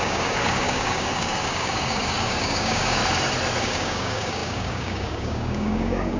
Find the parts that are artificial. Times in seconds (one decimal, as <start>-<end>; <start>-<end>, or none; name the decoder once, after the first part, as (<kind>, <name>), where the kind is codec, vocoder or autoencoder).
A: 0.0-3.0 (codec, DAC); 3.6-6.2